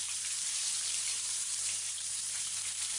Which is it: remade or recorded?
remade